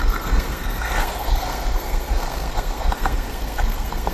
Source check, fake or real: fake